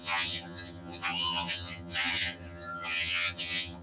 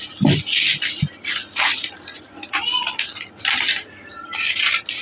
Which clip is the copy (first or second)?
first